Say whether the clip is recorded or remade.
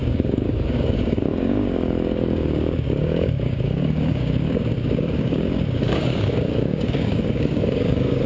remade